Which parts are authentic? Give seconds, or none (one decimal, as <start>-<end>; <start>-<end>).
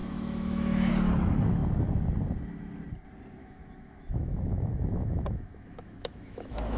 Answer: 0.9-3.4